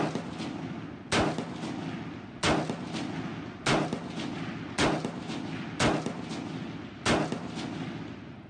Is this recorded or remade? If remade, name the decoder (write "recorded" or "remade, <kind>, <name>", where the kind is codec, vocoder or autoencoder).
recorded